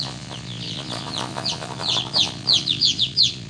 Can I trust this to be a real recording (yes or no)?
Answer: no